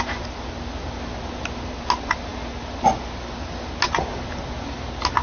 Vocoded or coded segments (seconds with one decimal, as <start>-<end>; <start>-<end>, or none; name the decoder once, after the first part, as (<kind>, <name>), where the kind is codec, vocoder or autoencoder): none